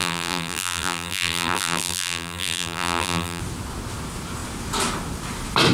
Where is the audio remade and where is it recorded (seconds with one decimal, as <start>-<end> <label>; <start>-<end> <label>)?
0.0-3.4 remade; 3.4-5.7 recorded